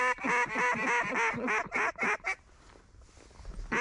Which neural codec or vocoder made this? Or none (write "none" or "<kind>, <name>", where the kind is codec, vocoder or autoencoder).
none